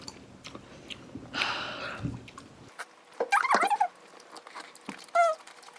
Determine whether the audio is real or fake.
real